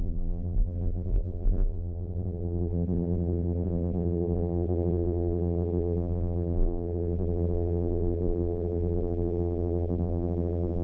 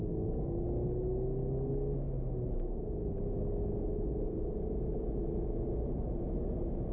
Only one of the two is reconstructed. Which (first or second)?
first